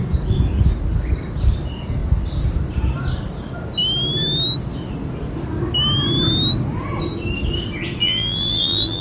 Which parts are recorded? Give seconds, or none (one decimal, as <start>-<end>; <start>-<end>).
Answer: 0.0-8.0

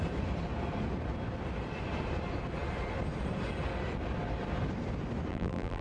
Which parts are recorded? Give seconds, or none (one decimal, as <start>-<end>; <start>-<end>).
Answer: 0.0-5.3

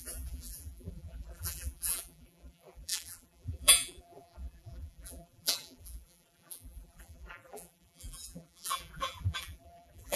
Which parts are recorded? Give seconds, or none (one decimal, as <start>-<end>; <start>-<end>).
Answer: none

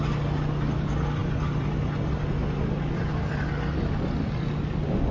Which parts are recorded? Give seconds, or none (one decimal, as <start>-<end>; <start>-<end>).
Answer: 0.0-5.1